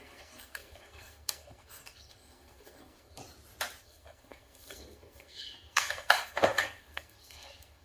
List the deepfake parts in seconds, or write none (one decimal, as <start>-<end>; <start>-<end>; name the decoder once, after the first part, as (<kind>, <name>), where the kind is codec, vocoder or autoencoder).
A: 0.0-3.2 (codec, SNAC); 3.8-7.8